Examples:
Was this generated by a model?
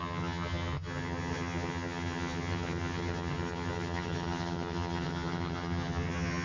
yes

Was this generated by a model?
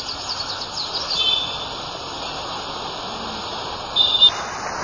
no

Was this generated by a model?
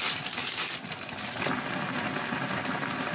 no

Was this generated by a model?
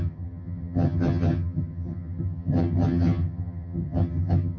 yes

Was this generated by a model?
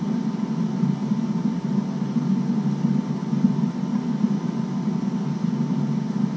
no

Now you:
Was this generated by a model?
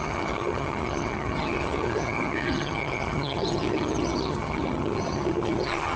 yes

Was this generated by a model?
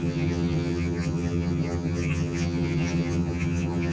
yes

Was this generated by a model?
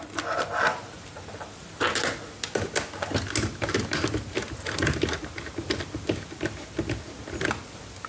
no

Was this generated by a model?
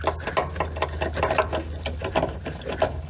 no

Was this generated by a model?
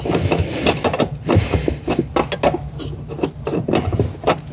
no